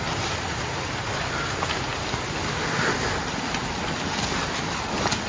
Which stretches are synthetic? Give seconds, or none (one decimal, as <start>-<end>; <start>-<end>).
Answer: none